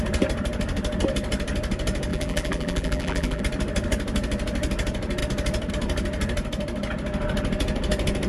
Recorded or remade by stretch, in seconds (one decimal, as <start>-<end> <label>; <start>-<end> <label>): 0.0-2.1 recorded; 2.1-3.4 remade; 3.4-8.3 recorded